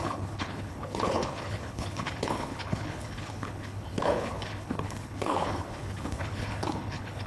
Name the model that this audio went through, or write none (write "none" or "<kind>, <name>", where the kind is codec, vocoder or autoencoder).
codec, HILCodec